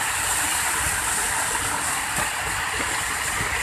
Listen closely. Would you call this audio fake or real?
real